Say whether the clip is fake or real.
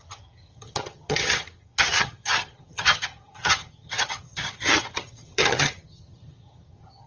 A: fake